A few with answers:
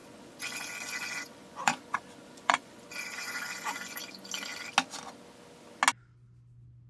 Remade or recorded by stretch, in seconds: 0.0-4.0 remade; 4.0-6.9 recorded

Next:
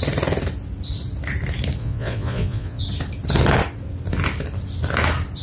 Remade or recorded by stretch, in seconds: 0.0-1.8 recorded; 1.8-2.8 remade; 2.8-5.4 recorded

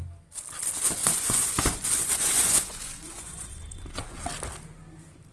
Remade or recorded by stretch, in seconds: 0.0-1.0 recorded; 1.0-4.2 remade; 4.2-5.3 recorded

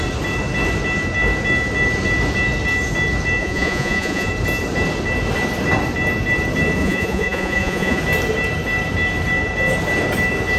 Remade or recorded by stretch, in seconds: 0.0-3.4 recorded; 3.4-4.3 remade; 4.3-6.8 recorded; 6.8-8.0 remade; 8.0-10.6 recorded

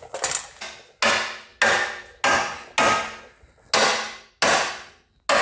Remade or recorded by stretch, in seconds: 0.0-5.4 recorded

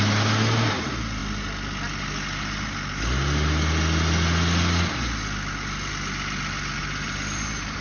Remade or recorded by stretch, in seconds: 0.0-6.8 recorded; 6.8-7.8 remade

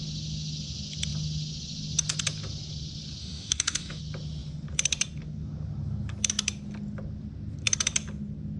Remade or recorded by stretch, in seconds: 0.0-3.2 recorded; 3.2-4.0 remade; 4.0-8.6 recorded